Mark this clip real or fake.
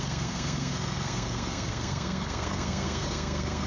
fake